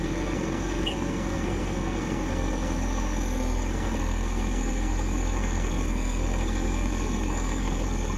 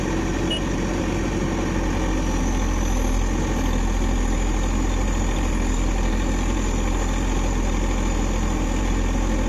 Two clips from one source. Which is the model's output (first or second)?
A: first